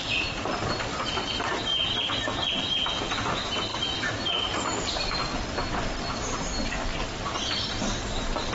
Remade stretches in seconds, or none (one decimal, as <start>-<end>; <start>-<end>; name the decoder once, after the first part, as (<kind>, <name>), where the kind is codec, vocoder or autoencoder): 0.0-1.7 (vocoder, BigVGAN v2); 2.7-8.5